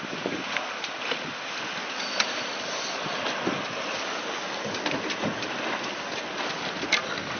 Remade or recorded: recorded